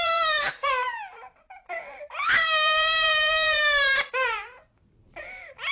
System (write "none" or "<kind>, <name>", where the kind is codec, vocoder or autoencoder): vocoder, BigVGAN v2